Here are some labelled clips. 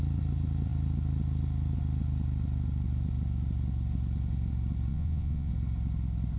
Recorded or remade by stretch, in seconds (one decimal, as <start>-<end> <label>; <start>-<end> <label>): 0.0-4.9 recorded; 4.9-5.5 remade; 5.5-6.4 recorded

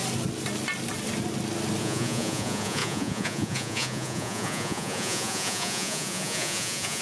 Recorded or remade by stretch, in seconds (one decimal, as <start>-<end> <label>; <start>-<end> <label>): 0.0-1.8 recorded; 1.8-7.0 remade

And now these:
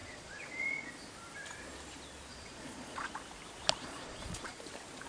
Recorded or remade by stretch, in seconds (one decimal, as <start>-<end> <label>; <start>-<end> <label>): 0.0-0.9 remade; 0.9-2.3 recorded; 2.3-3.1 remade; 3.1-3.8 recorded; 3.8-4.6 remade; 4.6-5.1 recorded

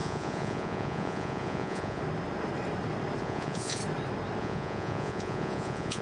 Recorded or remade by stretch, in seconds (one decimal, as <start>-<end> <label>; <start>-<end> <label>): 0.0-2.0 remade; 2.0-3.2 recorded; 3.2-3.8 remade; 3.8-4.4 recorded; 4.4-6.0 remade